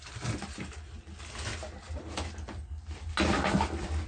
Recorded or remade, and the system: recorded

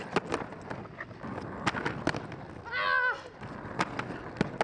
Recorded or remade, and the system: recorded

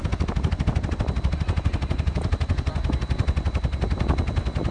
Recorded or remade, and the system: recorded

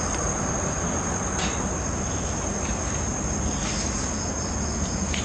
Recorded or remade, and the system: recorded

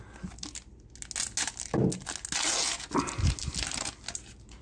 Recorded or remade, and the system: recorded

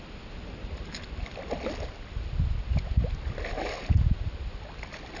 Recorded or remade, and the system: recorded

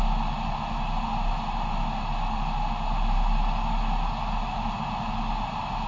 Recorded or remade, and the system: recorded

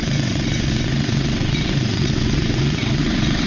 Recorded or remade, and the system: remade, vocoder, WaveNeXt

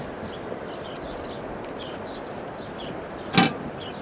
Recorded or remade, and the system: recorded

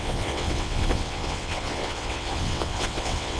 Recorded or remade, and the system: remade, vocoder, WaveNeXt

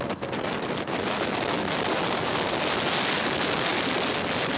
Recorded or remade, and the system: recorded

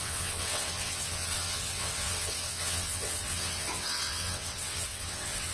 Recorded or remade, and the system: remade, vocoder, WaveNeXt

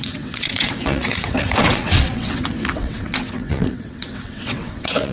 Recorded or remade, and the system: remade, vocoder, WaveNeXt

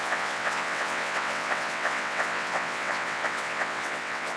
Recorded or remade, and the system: remade, vocoder, WaveNeXt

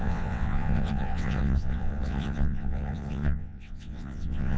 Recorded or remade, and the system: remade, vocoder, WaveNeXt